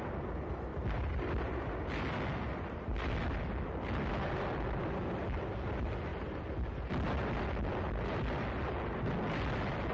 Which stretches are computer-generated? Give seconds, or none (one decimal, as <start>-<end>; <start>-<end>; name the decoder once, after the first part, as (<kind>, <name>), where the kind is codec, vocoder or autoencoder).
none